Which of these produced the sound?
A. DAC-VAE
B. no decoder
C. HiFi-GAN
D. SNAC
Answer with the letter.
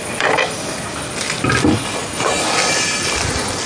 B